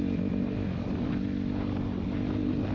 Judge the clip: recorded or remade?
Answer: recorded